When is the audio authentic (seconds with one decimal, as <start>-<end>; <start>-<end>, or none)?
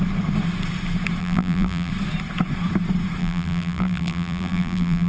0.0-1.2; 1.9-3.2